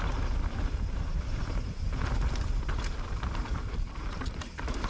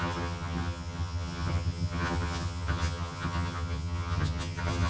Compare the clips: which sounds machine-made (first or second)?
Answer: second